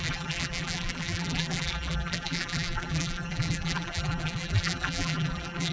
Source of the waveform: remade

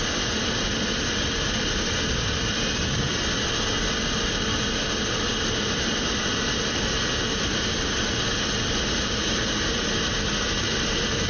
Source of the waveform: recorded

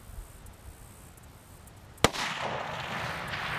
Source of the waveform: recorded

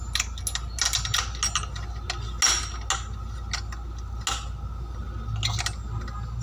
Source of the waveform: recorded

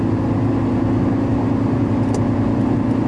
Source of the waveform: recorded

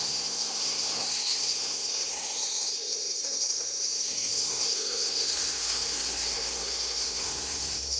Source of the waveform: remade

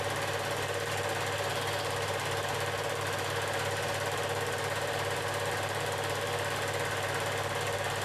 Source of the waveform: recorded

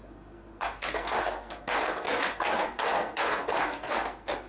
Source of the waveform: remade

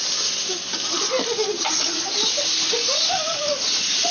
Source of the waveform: recorded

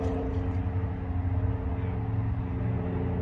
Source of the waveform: recorded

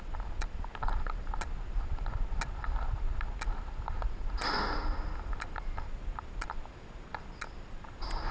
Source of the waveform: recorded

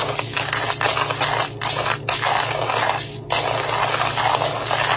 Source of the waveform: recorded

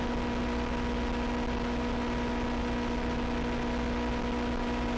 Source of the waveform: recorded